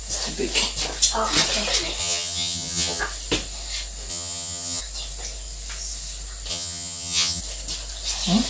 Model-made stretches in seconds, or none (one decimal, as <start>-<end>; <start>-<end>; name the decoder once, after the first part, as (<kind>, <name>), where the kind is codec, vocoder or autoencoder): 2.0-3.0 (vocoder, HiFi-GAN); 4.1-4.8; 6.5-7.4